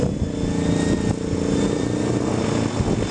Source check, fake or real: real